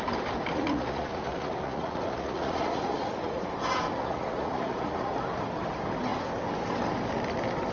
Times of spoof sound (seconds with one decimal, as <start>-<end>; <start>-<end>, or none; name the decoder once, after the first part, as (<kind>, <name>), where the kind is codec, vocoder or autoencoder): 0.5-3.5 (vocoder, Vocos); 4.0-5.1

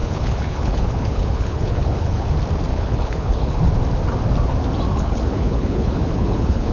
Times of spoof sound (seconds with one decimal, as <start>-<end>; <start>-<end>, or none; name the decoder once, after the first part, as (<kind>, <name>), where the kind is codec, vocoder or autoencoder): 0.0-2.3 (codec, HILCodec); 2.7-3.6; 4.9-6.7

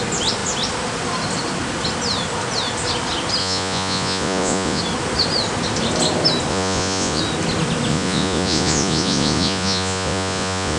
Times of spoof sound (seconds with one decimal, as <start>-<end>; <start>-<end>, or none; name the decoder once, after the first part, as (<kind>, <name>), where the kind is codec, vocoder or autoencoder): 3.4-4.8 (vocoder, Vocos); 6.5-7.2; 7.9-10.8

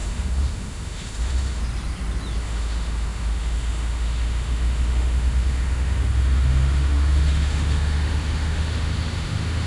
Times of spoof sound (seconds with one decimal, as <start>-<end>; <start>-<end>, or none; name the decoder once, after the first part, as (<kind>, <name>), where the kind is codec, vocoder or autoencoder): 0.0-1.6 (autoencoder, DAC-VAE); 2.4-9.7